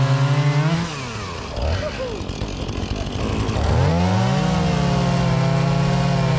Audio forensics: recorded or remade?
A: recorded